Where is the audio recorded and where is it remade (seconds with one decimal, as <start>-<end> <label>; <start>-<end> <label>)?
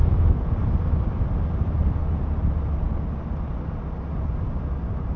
0.0-0.5 remade; 0.5-5.2 recorded